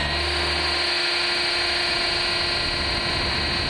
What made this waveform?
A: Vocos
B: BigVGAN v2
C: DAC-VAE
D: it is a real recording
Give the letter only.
D